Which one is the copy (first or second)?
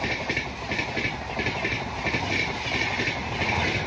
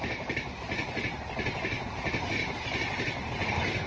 second